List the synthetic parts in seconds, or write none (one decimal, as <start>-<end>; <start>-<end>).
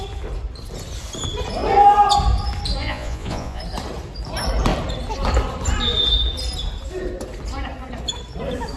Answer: 2.8-3.6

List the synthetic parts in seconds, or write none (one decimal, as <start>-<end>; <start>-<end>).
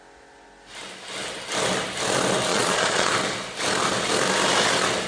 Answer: 2.5-3.1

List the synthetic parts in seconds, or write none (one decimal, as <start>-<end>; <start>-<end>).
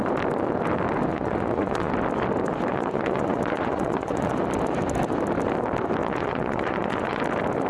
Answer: 1.1-1.9; 2.7-4.3; 6.0-7.2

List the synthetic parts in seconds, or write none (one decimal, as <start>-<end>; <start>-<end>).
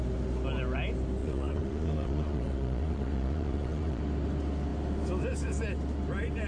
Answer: 1.2-4.0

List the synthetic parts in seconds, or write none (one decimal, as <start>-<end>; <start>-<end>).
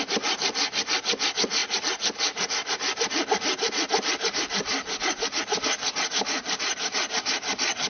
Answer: none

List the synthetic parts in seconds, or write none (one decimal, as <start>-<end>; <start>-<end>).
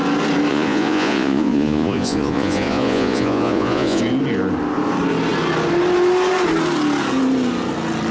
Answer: 0.5-4.0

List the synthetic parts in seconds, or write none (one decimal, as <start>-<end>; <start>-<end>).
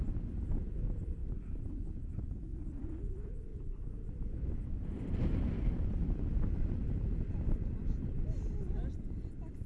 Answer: none